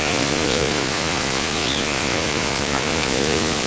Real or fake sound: fake